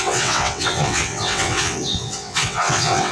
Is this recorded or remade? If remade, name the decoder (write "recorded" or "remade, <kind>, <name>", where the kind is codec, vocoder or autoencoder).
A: remade, vocoder, WaveNeXt